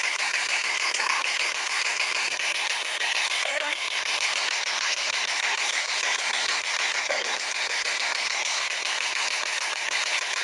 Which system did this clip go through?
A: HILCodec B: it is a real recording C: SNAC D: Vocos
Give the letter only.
C